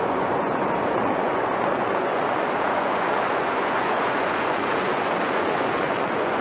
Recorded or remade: remade